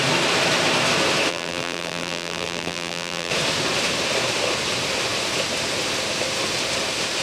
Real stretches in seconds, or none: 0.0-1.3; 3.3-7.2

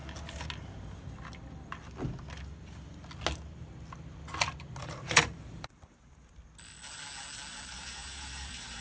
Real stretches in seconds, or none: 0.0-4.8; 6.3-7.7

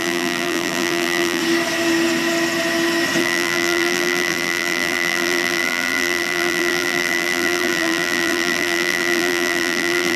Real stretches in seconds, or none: 1.4-3.2